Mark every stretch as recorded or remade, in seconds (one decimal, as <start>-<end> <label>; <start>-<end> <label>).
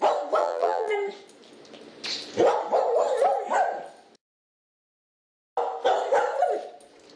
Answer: 0.0-0.4 recorded; 0.4-0.9 remade; 0.9-7.2 recorded